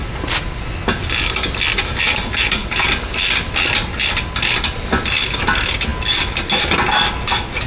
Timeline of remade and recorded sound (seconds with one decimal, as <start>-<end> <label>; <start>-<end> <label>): 0.0-7.7 recorded